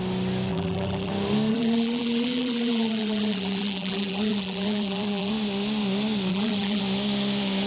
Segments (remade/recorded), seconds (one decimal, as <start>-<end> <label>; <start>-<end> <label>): 0.0-0.5 recorded; 0.5-1.1 remade; 1.1-1.5 recorded; 1.5-5.3 remade; 5.3-6.3 recorded; 6.3-6.8 remade; 6.8-7.7 recorded

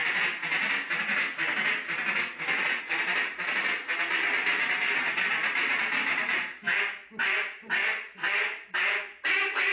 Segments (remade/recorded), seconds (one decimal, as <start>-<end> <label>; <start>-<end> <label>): 0.0-5.4 recorded; 5.4-6.3 remade; 6.3-7.2 recorded; 7.2-9.0 remade; 9.0-9.7 recorded

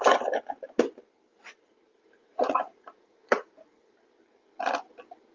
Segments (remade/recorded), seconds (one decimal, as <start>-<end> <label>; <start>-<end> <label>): 0.0-1.3 recorded; 1.3-3.9 remade; 3.9-5.3 recorded

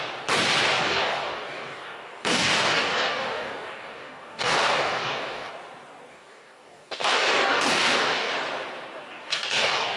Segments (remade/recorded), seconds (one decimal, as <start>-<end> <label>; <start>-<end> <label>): 0.0-0.8 recorded; 0.8-5.5 remade; 5.5-6.1 recorded; 6.1-8.3 remade; 8.3-9.1 recorded; 9.1-10.0 remade

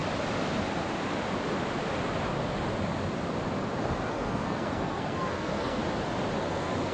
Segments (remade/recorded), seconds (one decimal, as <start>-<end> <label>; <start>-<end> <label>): 0.0-4.1 recorded; 4.1-5.8 remade; 5.8-6.4 recorded; 6.4-6.9 remade

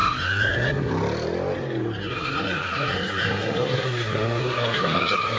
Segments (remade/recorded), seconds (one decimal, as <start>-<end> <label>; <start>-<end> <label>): 0.0-0.9 remade; 0.9-2.0 recorded; 2.0-5.4 remade

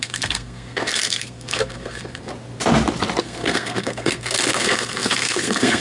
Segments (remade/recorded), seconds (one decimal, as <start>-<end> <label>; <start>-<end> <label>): 0.0-2.3 remade; 2.3-3.2 recorded; 3.2-5.8 remade

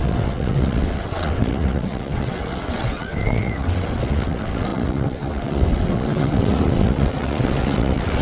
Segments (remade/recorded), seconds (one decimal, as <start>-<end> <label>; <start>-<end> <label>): 0.0-8.2 remade